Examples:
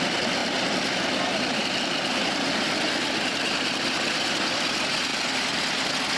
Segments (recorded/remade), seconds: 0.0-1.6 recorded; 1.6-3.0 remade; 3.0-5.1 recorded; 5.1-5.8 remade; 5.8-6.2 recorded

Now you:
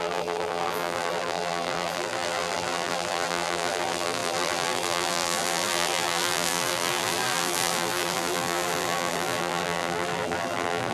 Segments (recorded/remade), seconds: 0.0-10.9 remade

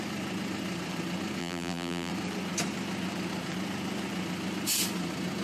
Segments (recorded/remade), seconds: 0.0-1.4 recorded; 1.4-2.1 remade; 2.1-5.4 recorded

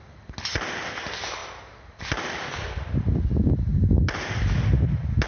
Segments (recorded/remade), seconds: 0.0-3.7 recorded; 3.7-4.4 remade; 4.4-5.3 recorded

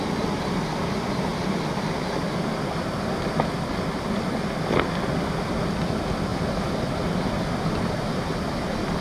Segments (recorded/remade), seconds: 0.0-9.0 recorded

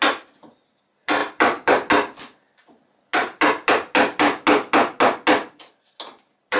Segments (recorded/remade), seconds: 0.0-1.2 recorded; 1.2-1.9 remade; 1.9-6.6 recorded